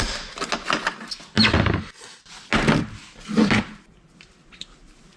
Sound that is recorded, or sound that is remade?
recorded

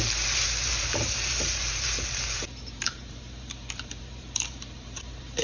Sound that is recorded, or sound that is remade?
remade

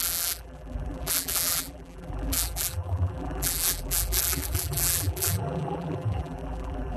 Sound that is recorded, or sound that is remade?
remade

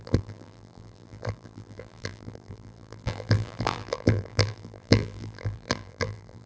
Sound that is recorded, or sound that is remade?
remade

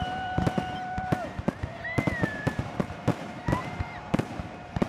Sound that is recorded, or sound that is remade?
remade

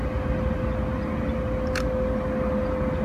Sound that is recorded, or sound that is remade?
recorded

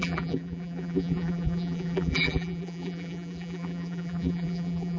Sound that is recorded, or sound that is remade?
remade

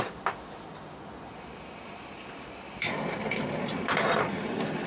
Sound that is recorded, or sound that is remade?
remade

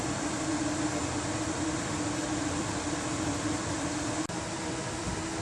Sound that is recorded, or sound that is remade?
remade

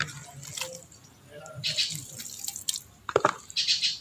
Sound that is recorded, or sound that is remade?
recorded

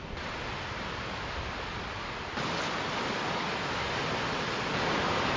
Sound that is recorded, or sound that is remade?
recorded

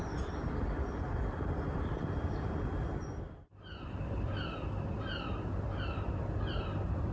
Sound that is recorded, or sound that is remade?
remade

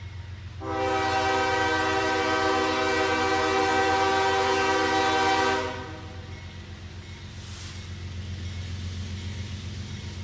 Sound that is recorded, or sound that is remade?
recorded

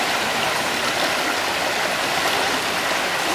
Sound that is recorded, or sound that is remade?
recorded